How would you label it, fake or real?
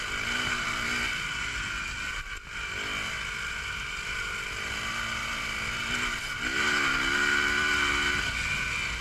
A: real